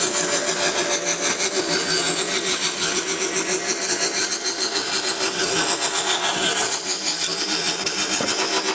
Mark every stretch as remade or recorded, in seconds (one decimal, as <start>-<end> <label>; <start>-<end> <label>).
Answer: 0.0-8.7 recorded